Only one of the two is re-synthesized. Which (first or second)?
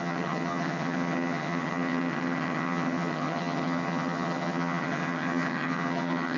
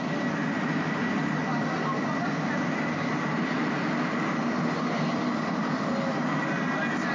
first